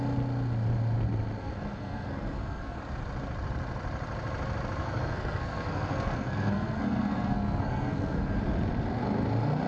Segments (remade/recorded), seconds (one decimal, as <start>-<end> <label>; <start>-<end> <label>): 0.0-1.4 recorded; 1.4-2.8 remade; 2.8-4.8 recorded; 4.8-8.4 remade; 8.4-9.7 recorded